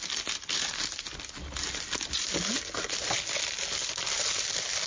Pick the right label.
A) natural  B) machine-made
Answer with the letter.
A